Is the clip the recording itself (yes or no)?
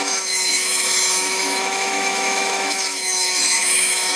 no